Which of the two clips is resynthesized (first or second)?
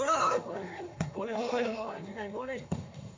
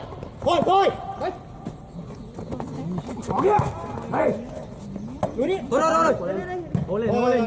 first